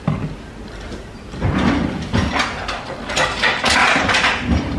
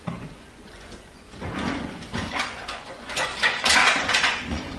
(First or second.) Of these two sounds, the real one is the first